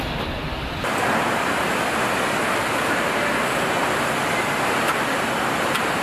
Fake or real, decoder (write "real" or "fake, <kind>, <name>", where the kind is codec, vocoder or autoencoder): real